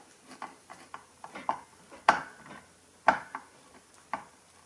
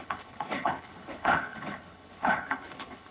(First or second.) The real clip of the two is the first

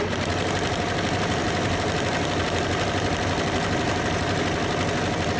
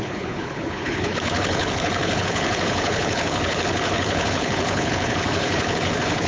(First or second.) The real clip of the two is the first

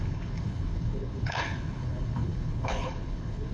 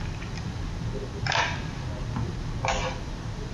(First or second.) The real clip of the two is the second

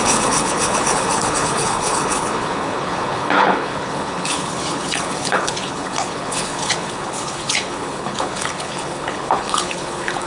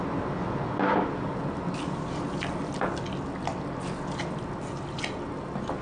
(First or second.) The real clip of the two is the second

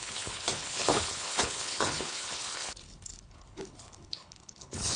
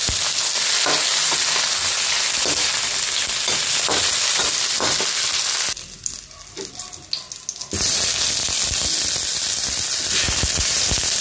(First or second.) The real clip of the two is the second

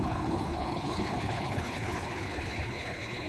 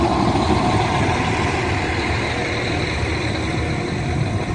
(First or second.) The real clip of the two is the second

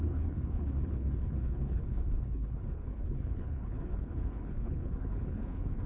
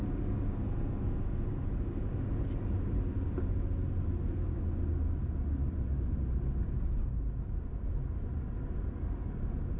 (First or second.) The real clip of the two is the second